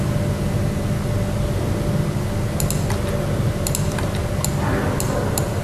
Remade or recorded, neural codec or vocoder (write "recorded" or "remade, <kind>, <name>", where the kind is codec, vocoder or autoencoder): recorded